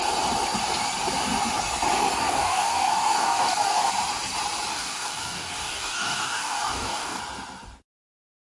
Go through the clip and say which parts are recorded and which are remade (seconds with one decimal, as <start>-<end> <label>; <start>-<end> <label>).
0.0-2.2 recorded; 2.2-3.9 remade; 3.9-4.7 recorded; 4.7-7.2 remade; 7.2-8.4 recorded